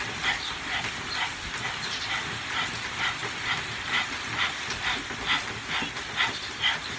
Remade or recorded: recorded